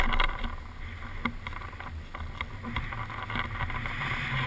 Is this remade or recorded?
recorded